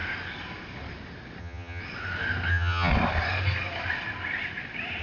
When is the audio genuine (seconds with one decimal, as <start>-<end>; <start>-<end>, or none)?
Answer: 0.0-1.4; 1.8-2.5; 2.9-5.0